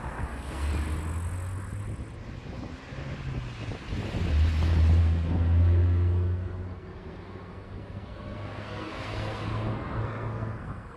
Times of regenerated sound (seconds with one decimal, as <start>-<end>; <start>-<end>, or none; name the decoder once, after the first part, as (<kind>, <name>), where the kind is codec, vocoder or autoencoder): 0.0-0.7 (codec, SNAC); 5.0-11.0